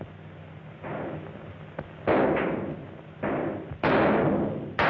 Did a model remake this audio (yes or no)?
no